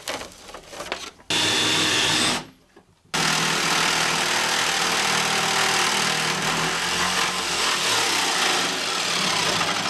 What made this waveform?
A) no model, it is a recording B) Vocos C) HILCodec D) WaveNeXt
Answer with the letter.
A